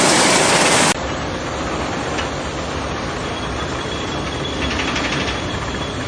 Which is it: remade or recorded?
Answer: recorded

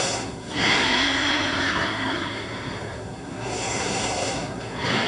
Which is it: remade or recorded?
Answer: remade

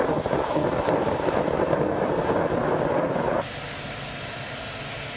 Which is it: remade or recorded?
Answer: recorded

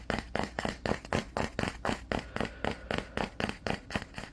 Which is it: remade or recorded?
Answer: recorded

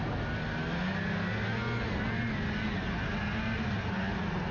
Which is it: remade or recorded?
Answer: recorded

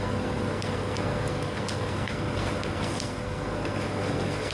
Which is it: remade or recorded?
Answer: remade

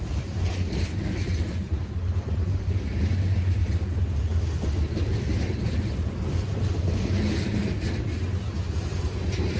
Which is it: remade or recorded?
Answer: recorded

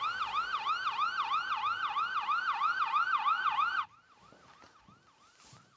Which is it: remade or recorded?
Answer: recorded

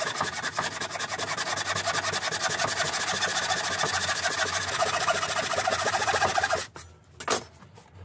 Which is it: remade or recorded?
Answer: recorded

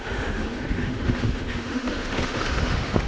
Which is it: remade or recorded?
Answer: remade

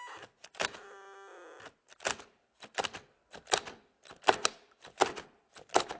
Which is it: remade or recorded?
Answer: recorded